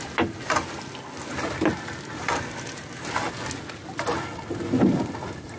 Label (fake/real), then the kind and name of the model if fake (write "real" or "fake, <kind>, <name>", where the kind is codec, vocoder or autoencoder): real